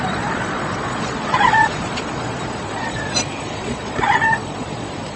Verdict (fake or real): fake